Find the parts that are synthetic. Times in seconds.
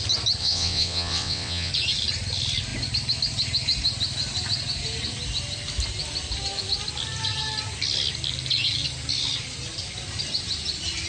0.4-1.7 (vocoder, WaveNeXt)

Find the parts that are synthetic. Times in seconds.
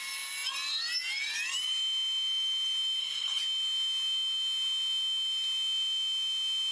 3.0-3.4 (codec, HILCodec)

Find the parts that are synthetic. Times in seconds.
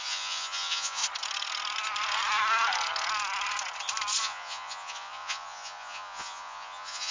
0.0-1.0 (vocoder, Vocos); 4.2-7.1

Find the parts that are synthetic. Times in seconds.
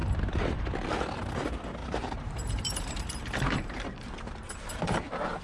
0.0-0.6 (vocoder, BigVGAN v2); 1.8-5.0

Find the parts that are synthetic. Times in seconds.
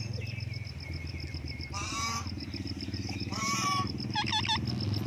1.3-4.4 (vocoder, BigVGAN v2)